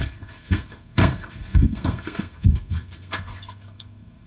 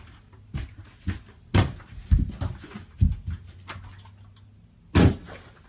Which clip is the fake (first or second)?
first